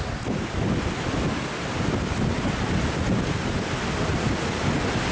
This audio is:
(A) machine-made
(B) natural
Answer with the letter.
B